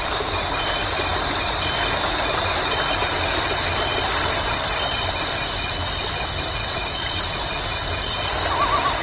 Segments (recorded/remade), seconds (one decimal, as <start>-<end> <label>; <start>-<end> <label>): 0.0-9.0 recorded